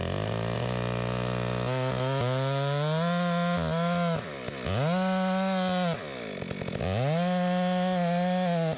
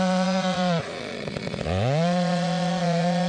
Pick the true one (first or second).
first